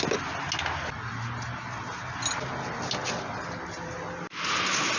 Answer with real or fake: real